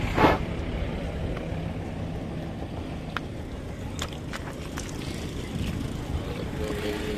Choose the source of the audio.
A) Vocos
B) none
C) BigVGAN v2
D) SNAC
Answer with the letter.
B